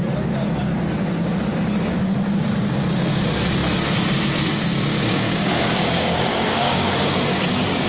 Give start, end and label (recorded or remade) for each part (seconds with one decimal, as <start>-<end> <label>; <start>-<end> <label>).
0.0-4.5 recorded; 4.5-7.9 remade